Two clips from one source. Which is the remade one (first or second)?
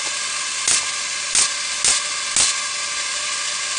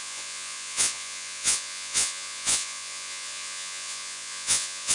second